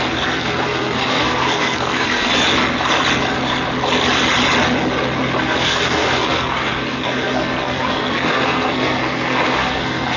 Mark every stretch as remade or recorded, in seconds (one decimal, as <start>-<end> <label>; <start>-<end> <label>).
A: 0.0-2.3 remade; 2.3-5.4 recorded; 5.4-10.2 remade